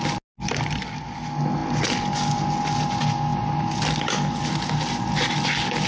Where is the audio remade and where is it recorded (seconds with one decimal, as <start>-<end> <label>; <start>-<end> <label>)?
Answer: 0.0-5.9 recorded